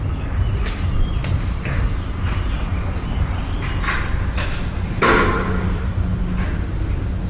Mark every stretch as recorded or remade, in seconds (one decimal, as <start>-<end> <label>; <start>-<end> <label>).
0.0-7.3 recorded